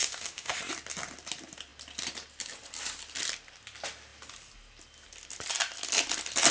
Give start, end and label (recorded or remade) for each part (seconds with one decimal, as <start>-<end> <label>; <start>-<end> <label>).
0.0-0.6 remade; 0.6-6.5 recorded